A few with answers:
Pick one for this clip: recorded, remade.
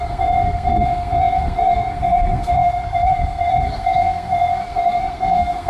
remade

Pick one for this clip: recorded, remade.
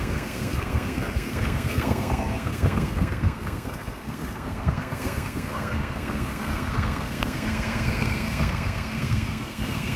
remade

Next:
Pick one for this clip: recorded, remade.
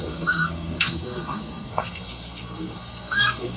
remade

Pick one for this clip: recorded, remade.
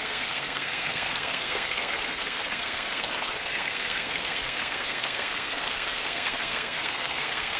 remade